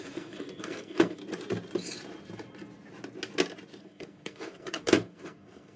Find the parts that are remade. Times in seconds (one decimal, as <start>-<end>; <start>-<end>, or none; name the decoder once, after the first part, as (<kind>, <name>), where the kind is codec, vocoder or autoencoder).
0.0-1.2 (codec, SNAC); 3.8-5.8

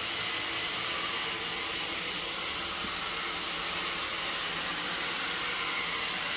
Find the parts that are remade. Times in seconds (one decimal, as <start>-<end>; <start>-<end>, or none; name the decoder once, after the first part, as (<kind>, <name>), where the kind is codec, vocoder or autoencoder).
none

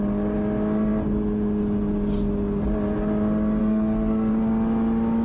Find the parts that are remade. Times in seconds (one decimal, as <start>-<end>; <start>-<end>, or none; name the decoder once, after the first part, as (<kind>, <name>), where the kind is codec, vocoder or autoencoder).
3.6-4.3 (codec, SNAC)

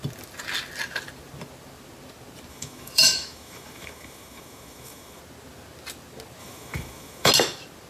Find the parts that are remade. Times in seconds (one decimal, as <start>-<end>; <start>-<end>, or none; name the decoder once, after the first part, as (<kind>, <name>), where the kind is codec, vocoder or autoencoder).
2.5-5.2 (autoencoder, DAC-VAE); 6.4-7.3

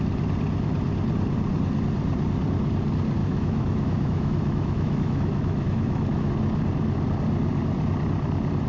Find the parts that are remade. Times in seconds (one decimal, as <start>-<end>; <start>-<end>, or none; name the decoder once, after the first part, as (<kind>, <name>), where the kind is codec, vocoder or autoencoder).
3.2-6.3 (autoencoder, DAC-VAE)

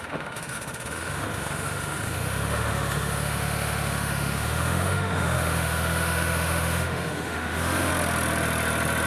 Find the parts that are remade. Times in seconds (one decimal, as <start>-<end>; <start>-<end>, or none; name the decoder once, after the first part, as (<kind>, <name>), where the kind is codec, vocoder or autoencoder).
0.0-7.9 (autoencoder, DAC-VAE)

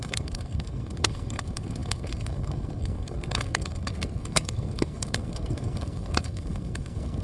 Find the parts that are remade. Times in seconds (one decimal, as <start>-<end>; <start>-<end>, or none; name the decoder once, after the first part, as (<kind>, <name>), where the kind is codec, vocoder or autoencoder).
0.0-7.2 (codec, SNAC)

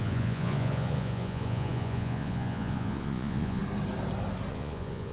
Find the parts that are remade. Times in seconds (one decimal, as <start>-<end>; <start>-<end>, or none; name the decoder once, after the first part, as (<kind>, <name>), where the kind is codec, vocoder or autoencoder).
0.0-3.6 (vocoder, Vocos); 4.5-5.1